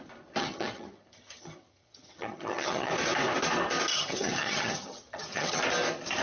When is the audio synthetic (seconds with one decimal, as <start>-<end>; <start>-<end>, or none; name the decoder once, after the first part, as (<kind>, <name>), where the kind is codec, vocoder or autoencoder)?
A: 0.4-2.9 (vocoder, HiFi-GAN); 3.9-5.6